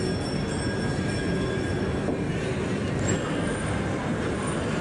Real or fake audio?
real